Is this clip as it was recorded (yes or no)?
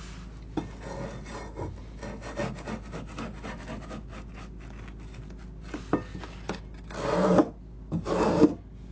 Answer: yes